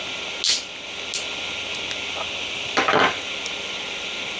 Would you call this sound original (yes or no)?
yes